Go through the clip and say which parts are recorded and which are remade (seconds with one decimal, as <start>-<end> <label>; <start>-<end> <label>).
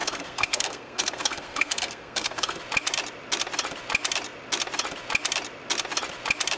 0.0-2.6 remade; 2.6-6.6 recorded